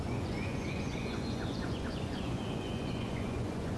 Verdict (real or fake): fake